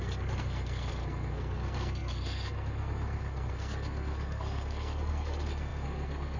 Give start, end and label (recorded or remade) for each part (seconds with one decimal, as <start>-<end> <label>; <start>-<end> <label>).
0.0-6.4 remade